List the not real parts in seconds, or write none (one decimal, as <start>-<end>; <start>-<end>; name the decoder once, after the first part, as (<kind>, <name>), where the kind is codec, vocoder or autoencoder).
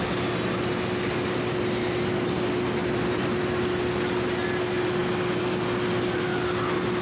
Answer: none